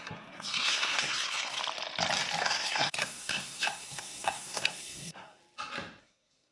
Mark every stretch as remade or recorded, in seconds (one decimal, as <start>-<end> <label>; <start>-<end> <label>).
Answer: 0.0-1.6 remade; 1.6-2.4 recorded; 2.4-5.4 remade; 5.4-6.0 recorded; 6.0-6.5 remade